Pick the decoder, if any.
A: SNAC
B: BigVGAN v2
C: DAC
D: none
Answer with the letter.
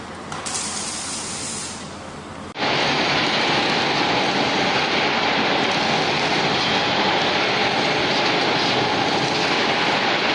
D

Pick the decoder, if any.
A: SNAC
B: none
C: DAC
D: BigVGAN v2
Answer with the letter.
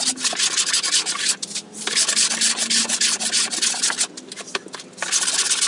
B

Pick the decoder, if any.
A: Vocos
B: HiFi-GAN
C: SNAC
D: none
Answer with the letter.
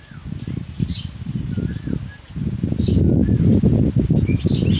D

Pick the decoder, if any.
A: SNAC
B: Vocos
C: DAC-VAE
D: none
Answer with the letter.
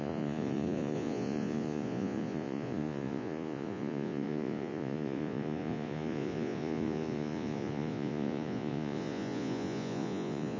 B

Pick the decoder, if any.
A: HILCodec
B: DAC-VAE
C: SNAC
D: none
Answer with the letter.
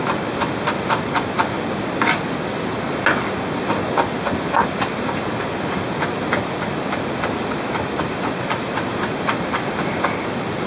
D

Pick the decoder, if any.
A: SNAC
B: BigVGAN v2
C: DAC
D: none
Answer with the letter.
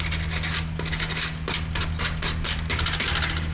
D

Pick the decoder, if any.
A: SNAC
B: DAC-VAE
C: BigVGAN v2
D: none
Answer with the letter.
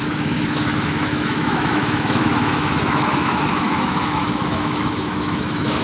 B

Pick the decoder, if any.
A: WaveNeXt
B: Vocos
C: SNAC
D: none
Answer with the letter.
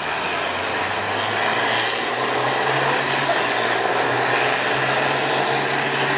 D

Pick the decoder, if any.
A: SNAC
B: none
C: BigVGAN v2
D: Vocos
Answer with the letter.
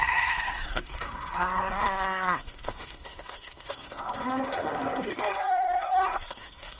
A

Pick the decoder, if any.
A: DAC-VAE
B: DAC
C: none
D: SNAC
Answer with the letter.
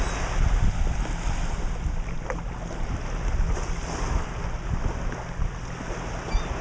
C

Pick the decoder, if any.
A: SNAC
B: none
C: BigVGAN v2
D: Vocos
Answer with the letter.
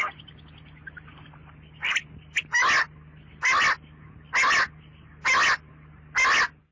B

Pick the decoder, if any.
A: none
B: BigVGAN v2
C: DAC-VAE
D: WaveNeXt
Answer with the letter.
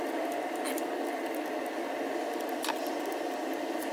A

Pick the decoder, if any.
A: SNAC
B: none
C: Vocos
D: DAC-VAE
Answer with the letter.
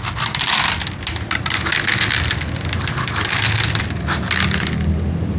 B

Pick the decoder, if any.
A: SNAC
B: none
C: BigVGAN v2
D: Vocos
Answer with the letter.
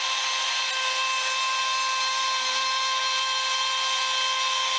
B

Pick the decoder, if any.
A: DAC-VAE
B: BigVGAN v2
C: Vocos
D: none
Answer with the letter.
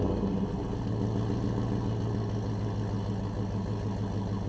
D